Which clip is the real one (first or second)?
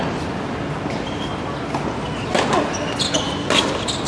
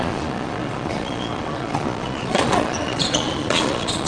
first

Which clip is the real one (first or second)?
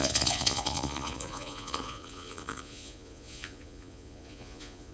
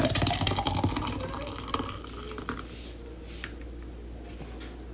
second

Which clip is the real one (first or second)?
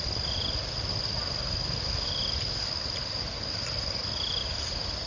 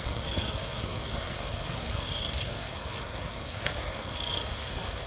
first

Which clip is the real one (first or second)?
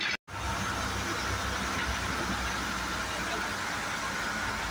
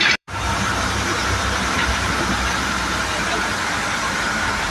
first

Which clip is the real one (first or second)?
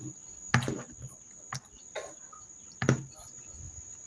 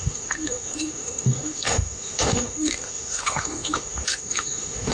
first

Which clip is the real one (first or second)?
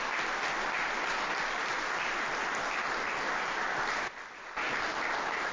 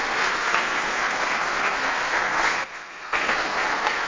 first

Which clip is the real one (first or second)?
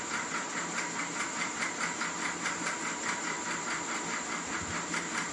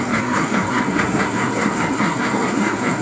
first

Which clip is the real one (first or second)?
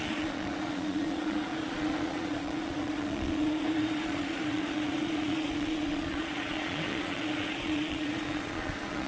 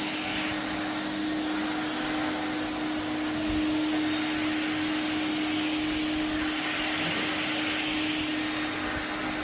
second